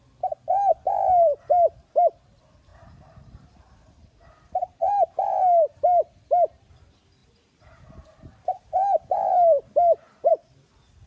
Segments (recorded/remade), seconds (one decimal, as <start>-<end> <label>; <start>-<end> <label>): 0.0-2.7 recorded; 2.7-6.7 remade; 6.7-7.2 recorded; 7.2-10.3 remade; 10.3-11.1 recorded